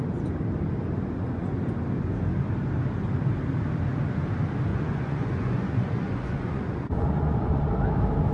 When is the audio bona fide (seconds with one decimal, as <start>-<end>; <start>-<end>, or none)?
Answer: 0.0-4.7; 7.7-8.3